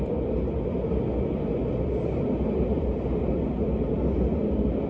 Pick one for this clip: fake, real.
real